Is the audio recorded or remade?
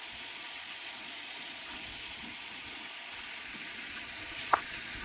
remade